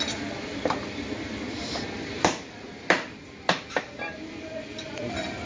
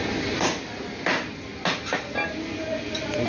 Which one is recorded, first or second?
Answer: second